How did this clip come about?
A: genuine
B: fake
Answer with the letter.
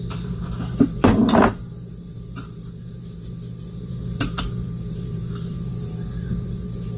B